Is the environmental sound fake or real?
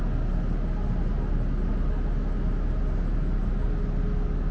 real